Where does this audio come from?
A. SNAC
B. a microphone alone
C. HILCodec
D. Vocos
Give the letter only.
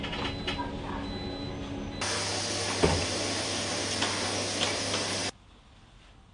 B